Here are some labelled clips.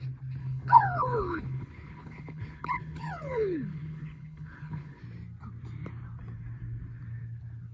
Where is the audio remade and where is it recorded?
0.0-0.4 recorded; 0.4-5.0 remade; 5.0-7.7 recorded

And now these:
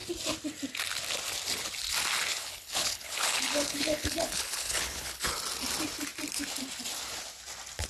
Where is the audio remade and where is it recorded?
0.0-2.3 recorded; 2.3-5.4 remade; 5.4-7.9 recorded